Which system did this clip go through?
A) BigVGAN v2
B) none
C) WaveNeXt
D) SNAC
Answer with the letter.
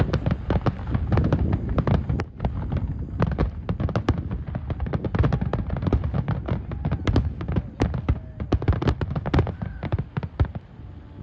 B